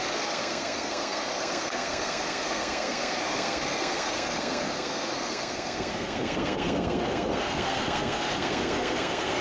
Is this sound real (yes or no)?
no